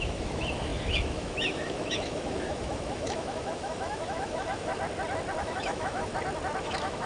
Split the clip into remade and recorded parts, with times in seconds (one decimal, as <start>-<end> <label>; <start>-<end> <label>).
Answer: 0.0-4.7 remade; 4.7-5.4 recorded; 5.4-6.1 remade; 6.1-6.6 recorded; 6.6-7.1 remade